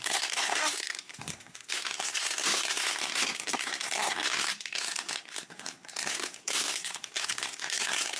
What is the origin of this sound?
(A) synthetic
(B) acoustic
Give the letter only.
A